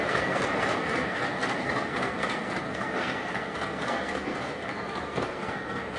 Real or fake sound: fake